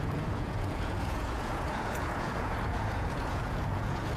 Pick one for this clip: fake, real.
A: fake